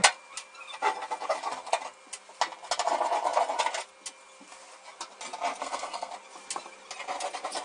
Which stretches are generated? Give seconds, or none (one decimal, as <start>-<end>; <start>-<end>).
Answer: 5.6-6.1